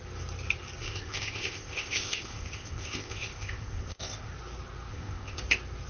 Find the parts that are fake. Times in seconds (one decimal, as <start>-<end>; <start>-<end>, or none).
0.8-4.3; 4.9-5.4